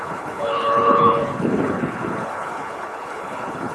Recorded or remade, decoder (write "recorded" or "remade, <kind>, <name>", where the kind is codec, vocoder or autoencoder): remade, codec, HILCodec